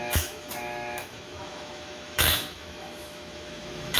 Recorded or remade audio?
remade